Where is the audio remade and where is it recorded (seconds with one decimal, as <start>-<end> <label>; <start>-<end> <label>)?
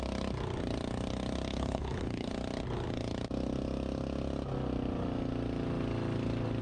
0.0-1.5 recorded; 1.5-2.3 remade; 2.3-6.6 recorded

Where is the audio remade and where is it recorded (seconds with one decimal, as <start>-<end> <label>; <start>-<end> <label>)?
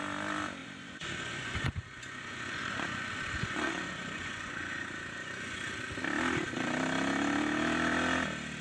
0.0-0.6 recorded; 0.6-5.6 remade; 5.6-8.6 recorded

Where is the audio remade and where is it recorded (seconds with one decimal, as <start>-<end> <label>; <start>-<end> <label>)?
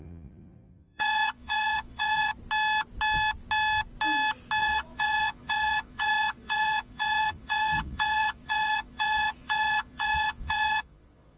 0.0-2.3 remade; 2.3-4.6 recorded; 4.6-11.4 remade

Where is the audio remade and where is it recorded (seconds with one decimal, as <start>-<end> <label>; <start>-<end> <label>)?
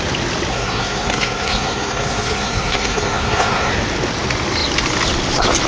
0.0-0.5 recorded; 0.5-3.7 remade; 3.7-5.7 recorded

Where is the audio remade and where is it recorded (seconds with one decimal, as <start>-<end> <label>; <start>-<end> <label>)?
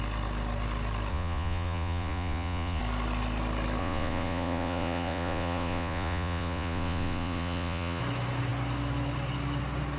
0.0-1.1 recorded; 1.1-2.8 remade; 2.8-3.8 recorded; 3.8-8.0 remade; 8.0-10.0 recorded